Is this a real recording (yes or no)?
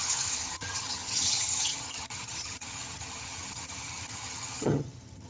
no